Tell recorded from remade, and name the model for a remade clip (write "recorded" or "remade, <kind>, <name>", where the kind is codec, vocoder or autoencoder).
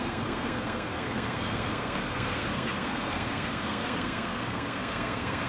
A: remade, codec, SNAC